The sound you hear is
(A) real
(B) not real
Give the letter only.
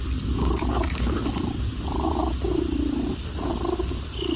A